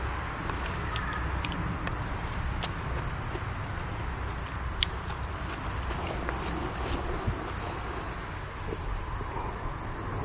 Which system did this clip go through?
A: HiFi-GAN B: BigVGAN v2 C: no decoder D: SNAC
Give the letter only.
C